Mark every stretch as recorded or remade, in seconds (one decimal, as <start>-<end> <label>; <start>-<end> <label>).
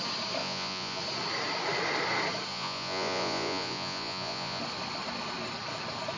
0.0-0.4 recorded; 0.4-1.0 remade; 1.0-2.5 recorded; 2.5-4.6 remade; 4.6-6.2 recorded